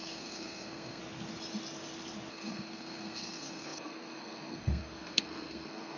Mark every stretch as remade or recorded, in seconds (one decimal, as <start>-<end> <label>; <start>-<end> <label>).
0.0-1.0 remade; 1.0-2.3 recorded; 2.3-6.0 remade